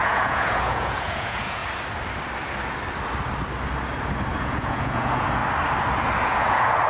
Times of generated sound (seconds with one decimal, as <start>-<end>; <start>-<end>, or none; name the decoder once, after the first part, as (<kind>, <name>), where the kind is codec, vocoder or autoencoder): 0.0-1.6 (vocoder, Vocos); 4.3-5.4; 6.2-6.9